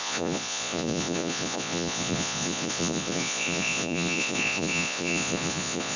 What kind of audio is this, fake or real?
fake